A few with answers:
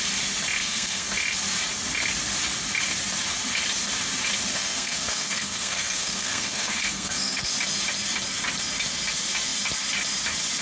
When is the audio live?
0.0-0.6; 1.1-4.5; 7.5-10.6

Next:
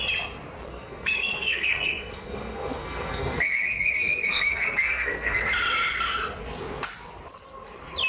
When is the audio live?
0.0-0.7; 5.4-8.1

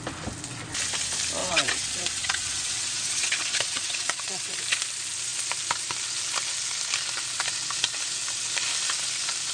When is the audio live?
0.0-1.4; 4.6-9.5

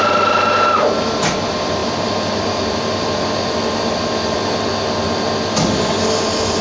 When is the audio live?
0.0-1.8; 4.7-6.6